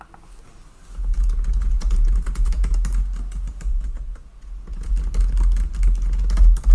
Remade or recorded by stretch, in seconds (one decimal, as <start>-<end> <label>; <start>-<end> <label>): 0.0-1.1 recorded; 1.1-2.7 remade; 2.7-3.7 recorded; 3.7-4.9 remade; 4.9-6.7 recorded